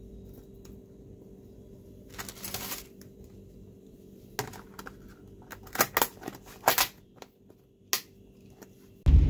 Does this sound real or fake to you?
real